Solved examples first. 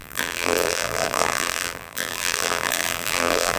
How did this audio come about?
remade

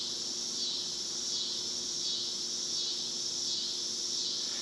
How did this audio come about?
recorded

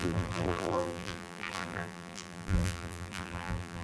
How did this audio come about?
remade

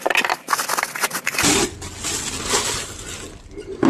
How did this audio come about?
recorded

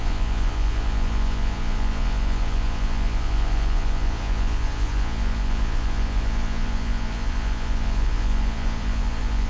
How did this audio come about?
remade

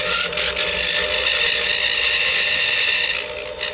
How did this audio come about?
recorded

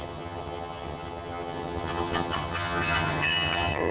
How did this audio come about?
remade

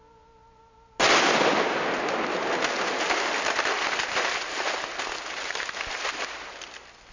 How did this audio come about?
recorded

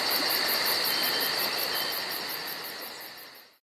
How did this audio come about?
recorded